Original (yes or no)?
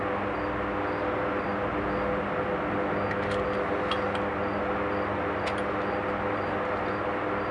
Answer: yes